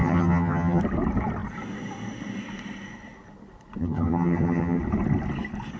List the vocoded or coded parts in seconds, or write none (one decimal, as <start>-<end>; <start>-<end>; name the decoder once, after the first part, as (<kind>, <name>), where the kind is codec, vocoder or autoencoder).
0.0-0.8 (vocoder, HiFi-GAN); 3.8-4.8